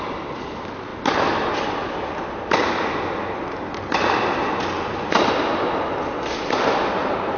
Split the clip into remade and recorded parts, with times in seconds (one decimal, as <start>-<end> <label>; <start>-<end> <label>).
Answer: 0.0-7.4 recorded